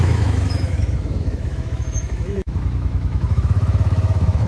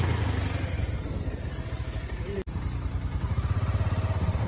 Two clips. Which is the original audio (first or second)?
second